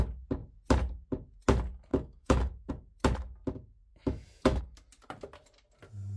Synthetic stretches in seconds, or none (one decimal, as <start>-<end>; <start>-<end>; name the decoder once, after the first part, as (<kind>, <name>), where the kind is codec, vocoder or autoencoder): 1.9-2.7 (autoencoder, DAC-VAE); 3.9-4.6